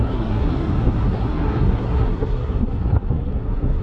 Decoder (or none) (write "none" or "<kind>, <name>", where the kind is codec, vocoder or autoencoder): codec, SNAC